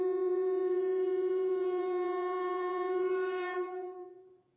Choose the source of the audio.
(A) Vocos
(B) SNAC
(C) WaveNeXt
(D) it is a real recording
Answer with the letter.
A